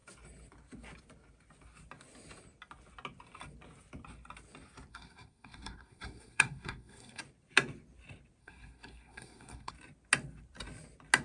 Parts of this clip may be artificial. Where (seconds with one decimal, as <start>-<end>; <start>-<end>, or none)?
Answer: 4.9-7.2; 8.4-9.7